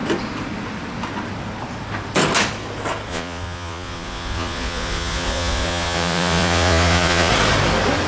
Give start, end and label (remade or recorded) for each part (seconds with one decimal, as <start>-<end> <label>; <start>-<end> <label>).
0.0-3.1 recorded; 3.1-7.3 remade; 7.3-8.1 recorded